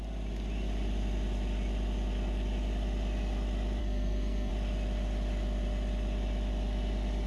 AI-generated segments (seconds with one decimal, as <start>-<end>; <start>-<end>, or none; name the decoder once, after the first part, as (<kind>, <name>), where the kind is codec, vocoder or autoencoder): 3.8-4.5 (codec, SNAC)